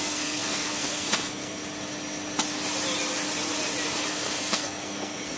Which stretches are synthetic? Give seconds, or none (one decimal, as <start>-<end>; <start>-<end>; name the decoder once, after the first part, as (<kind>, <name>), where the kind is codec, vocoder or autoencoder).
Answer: 0.0-1.6 (codec, SNAC); 4.1-5.4